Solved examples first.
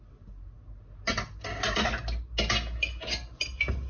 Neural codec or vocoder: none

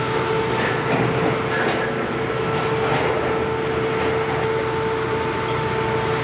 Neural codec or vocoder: none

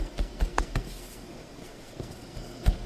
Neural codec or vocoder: codec, SNAC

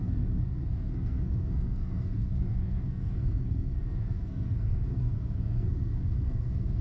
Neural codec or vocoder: codec, SNAC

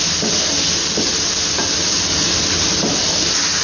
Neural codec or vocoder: none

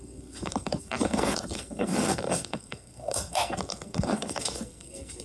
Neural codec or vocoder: codec, SNAC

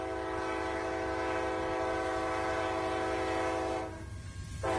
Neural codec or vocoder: none